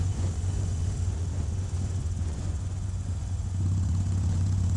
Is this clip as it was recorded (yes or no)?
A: no